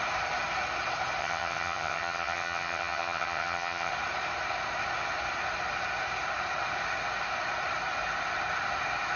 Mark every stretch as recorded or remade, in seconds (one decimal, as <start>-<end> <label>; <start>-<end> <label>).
0.0-1.2 recorded; 1.2-3.9 remade; 3.9-9.2 recorded